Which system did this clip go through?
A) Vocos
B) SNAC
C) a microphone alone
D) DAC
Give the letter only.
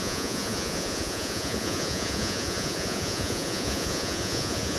A